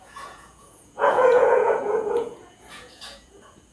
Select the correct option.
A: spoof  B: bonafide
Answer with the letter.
A